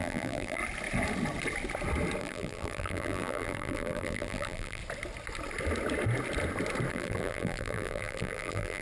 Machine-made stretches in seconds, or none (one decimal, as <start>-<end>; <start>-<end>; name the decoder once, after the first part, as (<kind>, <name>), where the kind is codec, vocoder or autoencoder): 0.0-0.6 (vocoder, BigVGAN v2); 2.2-4.8; 6.9-8.8